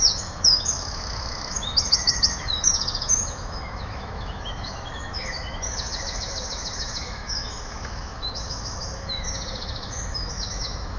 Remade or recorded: remade